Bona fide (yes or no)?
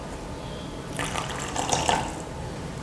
yes